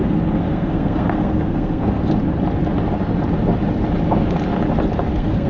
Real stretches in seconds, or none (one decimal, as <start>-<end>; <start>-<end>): 2.0-5.1